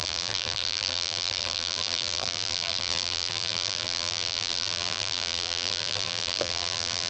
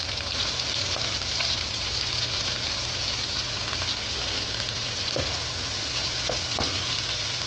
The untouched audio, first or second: second